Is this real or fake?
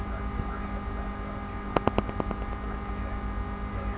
real